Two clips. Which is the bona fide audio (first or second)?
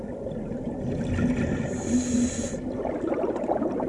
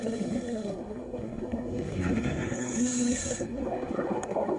first